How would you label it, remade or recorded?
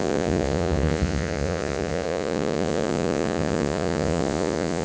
remade